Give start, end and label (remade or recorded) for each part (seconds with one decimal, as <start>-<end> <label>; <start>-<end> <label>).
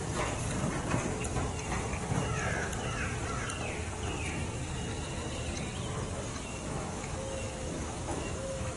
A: 0.0-6.3 recorded; 6.3-8.8 remade